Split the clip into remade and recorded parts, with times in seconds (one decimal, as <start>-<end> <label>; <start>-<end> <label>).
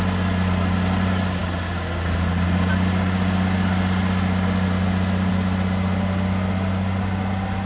0.0-7.7 recorded